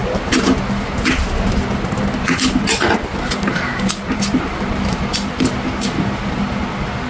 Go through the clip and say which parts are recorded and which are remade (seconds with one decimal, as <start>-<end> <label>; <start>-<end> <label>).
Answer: 0.0-7.1 recorded